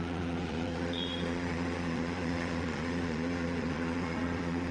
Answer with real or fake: fake